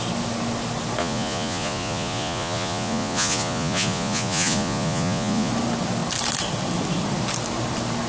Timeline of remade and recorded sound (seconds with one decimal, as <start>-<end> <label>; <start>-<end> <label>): 0.0-1.0 recorded; 1.0-5.5 remade; 5.5-8.1 recorded